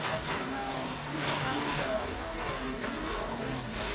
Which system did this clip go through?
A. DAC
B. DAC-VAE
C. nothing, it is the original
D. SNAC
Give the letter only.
A